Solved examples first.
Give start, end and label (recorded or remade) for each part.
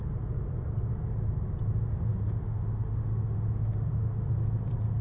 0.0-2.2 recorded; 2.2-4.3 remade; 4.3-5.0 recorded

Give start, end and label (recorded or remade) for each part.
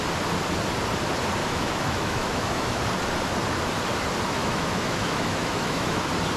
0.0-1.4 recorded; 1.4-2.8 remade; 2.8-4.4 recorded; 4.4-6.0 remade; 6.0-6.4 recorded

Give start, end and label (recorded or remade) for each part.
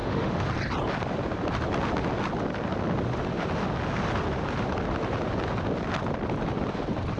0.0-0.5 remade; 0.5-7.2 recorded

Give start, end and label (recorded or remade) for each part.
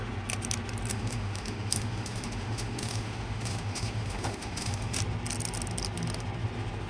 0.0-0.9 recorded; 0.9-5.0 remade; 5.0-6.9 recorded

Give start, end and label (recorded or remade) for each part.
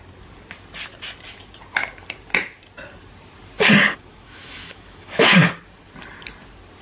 0.0-4.1 recorded; 4.1-5.3 remade; 5.3-6.8 recorded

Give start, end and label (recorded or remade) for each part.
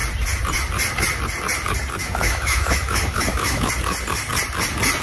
0.0-2.0 recorded; 2.0-3.7 remade; 3.7-5.0 recorded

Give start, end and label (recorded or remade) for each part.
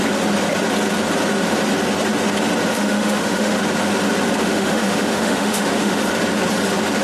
0.0-2.7 recorded; 2.7-3.6 remade; 3.6-4.4 recorded; 4.4-6.1 remade; 6.1-7.0 recorded